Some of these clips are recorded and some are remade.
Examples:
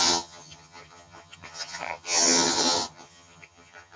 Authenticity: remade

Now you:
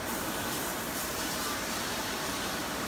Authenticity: remade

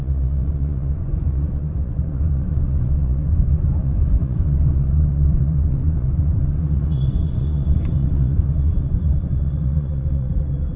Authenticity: remade